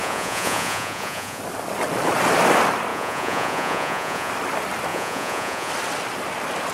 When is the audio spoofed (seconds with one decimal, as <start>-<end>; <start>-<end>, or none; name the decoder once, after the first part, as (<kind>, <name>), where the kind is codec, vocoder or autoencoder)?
0.0-1.4 (vocoder, Vocos); 2.9-4.3; 4.9-5.7